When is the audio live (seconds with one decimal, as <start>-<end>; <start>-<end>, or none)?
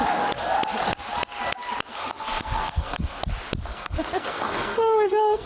0.0-1.9; 3.2-3.7